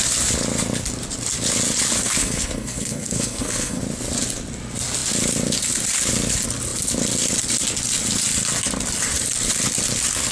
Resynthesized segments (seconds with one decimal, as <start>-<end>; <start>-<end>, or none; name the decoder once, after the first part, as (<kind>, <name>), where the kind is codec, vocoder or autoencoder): 2.2-3.8 (codec, SNAC)